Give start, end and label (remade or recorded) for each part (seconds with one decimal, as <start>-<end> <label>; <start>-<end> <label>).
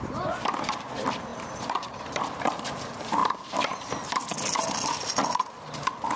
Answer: 0.0-1.3 recorded; 1.3-2.5 remade; 2.5-3.2 recorded; 3.2-3.9 remade; 3.9-6.2 recorded